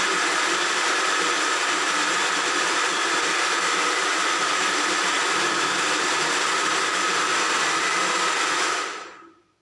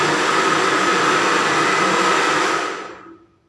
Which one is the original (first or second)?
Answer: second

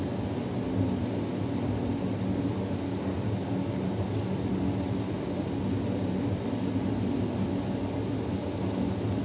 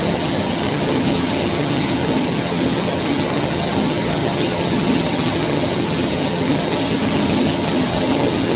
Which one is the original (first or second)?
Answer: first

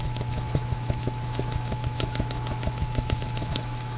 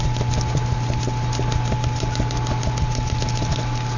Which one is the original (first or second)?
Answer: second